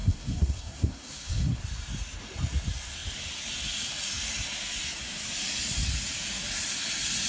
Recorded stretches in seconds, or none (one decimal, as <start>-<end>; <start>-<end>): 1.6-7.3